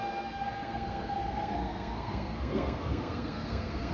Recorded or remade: remade